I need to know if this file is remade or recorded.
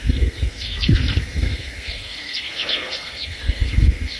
remade